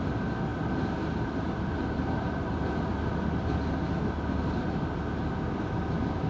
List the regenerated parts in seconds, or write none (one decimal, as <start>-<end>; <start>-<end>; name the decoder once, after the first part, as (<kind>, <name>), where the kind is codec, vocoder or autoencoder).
none